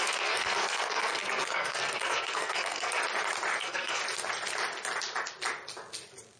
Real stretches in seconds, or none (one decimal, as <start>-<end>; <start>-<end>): 3.0-3.6; 4.0-6.4